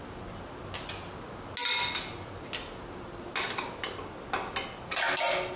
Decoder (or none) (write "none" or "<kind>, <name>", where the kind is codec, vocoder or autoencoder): none